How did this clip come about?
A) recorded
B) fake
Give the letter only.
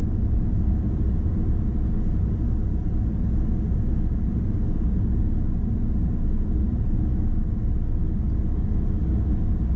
A